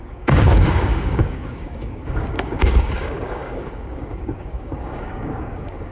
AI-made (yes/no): yes